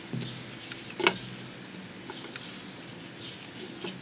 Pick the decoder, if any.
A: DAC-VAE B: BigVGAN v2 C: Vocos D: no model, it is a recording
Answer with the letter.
D